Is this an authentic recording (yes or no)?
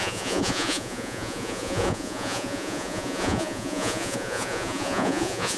no